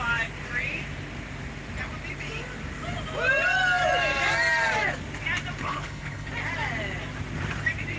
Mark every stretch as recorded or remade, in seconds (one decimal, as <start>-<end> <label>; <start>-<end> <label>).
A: 0.0-5.6 recorded; 5.6-6.3 remade; 6.3-8.0 recorded